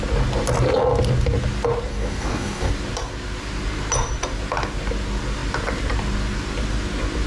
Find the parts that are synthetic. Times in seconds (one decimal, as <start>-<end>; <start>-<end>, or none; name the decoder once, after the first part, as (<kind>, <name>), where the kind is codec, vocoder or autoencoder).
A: 1.9-2.7 (codec, DAC)